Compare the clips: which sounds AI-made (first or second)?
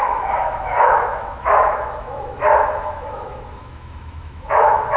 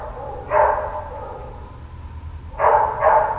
first